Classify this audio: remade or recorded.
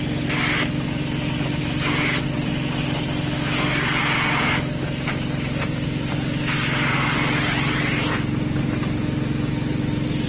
recorded